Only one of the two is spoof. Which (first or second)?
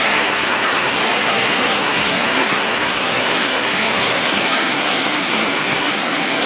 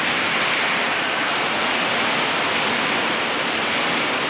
first